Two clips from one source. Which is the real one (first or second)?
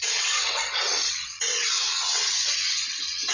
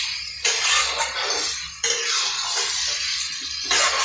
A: second